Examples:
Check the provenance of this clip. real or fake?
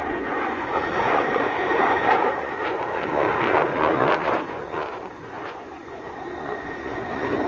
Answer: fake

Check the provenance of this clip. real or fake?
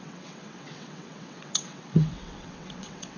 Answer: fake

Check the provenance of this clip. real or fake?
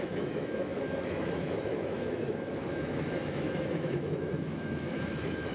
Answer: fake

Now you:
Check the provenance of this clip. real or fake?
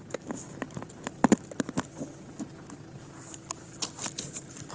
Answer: real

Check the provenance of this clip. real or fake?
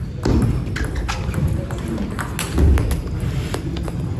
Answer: real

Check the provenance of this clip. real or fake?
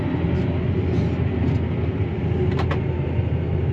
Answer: real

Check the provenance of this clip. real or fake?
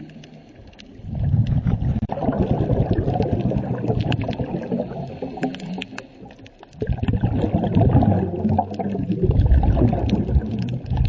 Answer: real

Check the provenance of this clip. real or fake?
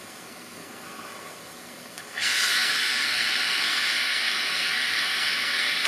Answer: fake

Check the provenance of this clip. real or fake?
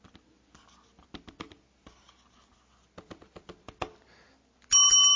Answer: real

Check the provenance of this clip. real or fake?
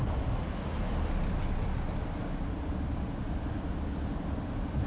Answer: real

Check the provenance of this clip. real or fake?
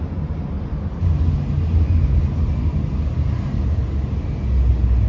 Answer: real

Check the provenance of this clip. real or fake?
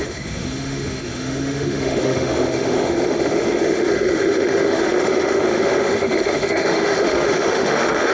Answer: fake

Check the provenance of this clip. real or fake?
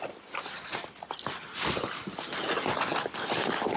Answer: real